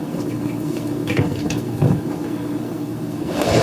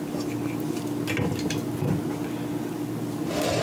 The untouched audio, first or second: second